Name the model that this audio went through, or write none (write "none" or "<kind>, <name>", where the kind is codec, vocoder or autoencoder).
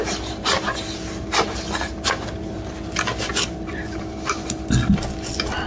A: none